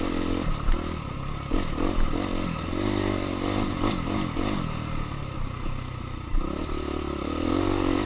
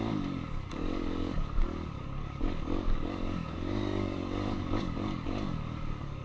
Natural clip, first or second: first